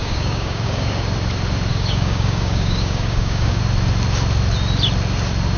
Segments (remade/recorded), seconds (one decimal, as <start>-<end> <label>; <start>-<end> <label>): 0.0-0.9 remade; 0.9-1.7 recorded; 1.7-3.6 remade; 3.6-5.6 recorded